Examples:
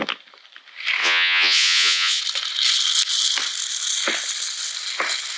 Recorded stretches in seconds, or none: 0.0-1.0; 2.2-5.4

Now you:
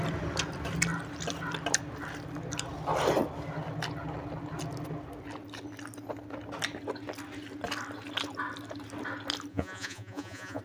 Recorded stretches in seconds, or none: 0.0-9.5